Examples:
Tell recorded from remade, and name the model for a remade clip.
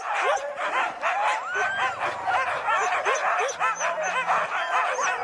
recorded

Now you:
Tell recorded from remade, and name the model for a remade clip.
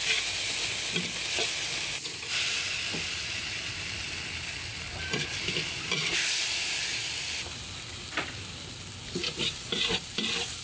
recorded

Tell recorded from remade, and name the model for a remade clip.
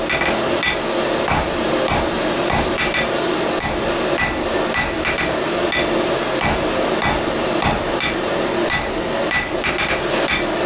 recorded